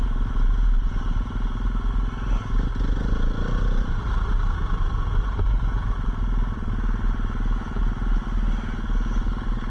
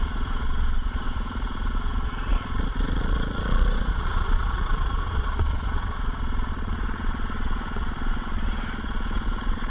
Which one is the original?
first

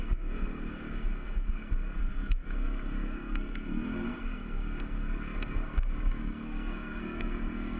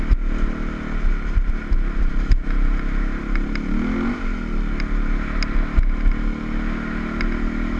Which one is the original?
second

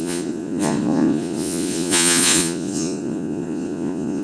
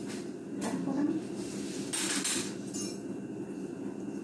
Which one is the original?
second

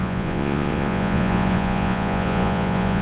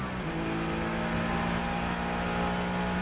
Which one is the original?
second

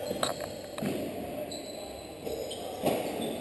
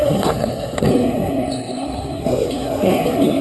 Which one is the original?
first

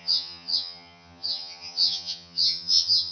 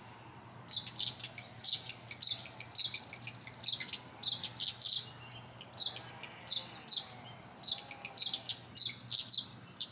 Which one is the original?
second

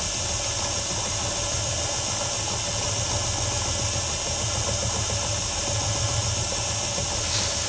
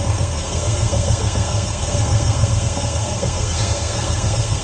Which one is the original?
first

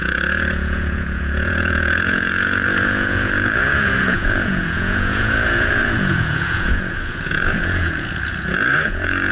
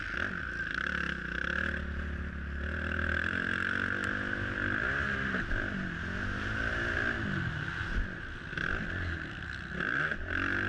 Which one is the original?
second